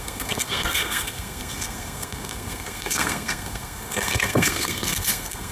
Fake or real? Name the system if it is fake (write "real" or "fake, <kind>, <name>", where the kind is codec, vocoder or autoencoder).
fake, codec, SNAC